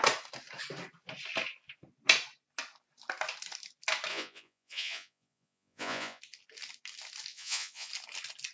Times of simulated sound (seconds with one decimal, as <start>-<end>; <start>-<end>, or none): 4.1-6.2; 7.3-7.9

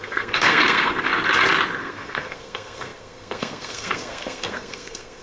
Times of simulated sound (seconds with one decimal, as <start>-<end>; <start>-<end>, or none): 0.0-1.1; 1.8-5.2

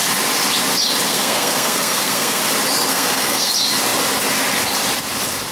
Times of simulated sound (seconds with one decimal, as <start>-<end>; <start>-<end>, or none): 1.1-2.4; 2.9-3.5

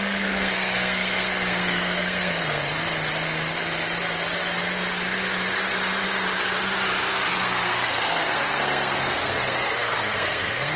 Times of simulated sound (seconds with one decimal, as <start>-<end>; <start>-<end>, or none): 0.0-2.6; 7.3-10.8